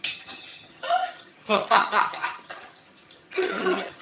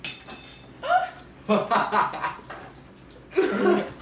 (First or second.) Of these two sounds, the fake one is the first